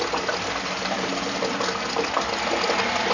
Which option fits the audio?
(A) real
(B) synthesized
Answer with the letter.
A